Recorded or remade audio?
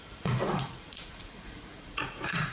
remade